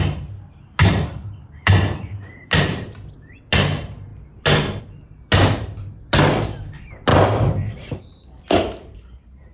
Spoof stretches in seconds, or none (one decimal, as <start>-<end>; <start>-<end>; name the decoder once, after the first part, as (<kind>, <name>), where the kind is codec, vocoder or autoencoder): 7.1-8.4 (vocoder, BigVGAN v2)